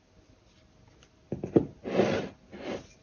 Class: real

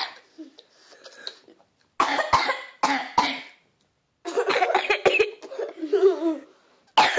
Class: real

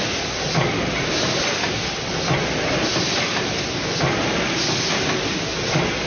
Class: real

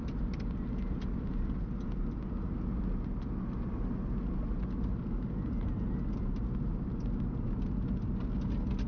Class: real